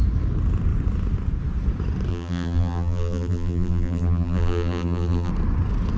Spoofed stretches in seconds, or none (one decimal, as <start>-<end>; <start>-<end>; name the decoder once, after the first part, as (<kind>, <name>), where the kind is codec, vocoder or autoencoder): 2.1-5.3 (vocoder, BigVGAN v2)